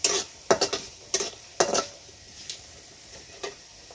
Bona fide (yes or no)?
yes